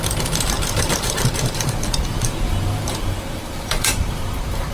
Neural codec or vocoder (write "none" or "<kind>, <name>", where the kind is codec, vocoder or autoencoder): vocoder, BigVGAN v2